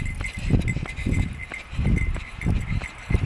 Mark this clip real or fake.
real